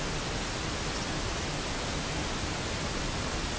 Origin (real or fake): real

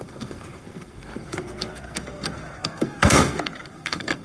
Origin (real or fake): fake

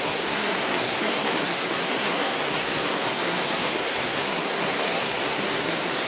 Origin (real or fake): fake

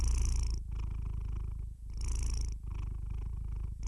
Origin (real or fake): real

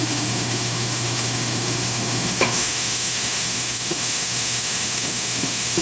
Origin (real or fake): fake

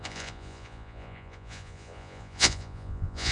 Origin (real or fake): fake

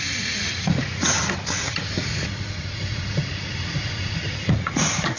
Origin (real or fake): fake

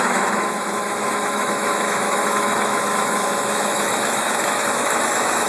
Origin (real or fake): fake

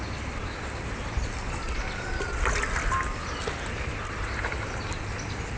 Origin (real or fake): real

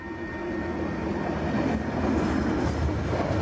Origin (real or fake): real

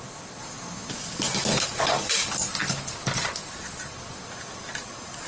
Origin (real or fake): real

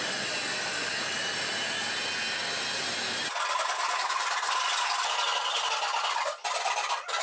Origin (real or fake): real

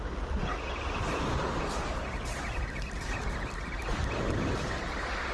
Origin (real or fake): real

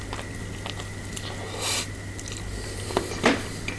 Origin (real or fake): real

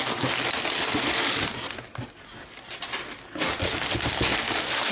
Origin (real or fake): real